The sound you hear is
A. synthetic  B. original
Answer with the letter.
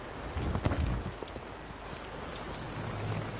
B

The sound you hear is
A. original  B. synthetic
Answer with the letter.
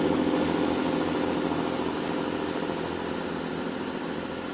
A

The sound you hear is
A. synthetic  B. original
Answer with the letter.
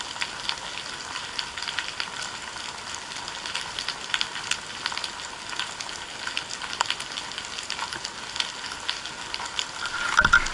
B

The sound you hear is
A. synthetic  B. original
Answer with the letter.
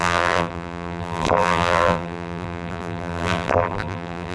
A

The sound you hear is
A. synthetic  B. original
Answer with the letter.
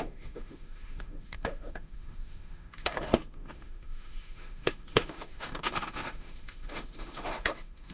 A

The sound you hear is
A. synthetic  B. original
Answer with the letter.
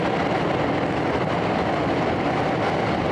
B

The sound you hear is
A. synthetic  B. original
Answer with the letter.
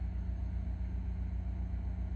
B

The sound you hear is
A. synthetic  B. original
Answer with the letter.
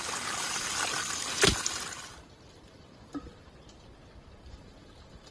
B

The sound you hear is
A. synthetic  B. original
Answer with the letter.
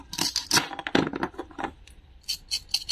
B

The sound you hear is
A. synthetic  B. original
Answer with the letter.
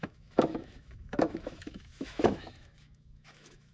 A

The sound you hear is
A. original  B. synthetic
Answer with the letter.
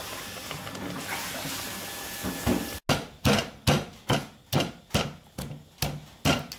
A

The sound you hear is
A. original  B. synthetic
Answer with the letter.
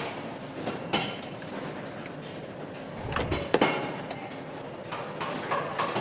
A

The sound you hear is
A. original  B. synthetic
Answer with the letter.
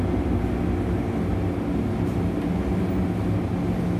A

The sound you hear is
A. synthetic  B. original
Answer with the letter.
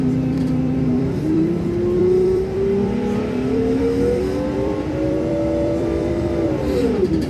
A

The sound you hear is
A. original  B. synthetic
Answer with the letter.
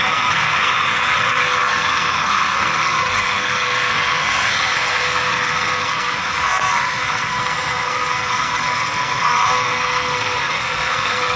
B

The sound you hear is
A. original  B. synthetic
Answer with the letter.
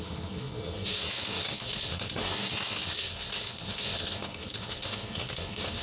B